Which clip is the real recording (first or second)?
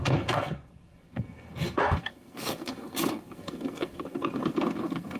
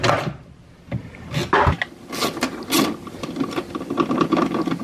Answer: second